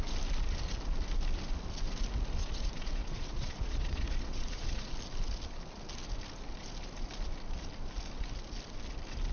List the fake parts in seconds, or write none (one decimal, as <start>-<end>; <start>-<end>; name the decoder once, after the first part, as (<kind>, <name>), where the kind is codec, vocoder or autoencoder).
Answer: 2.4-4.9 (vocoder, Vocos)